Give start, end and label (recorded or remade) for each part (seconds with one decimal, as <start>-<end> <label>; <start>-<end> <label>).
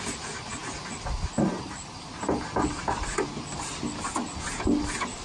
0.0-5.2 recorded